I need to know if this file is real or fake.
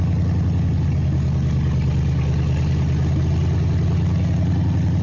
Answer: real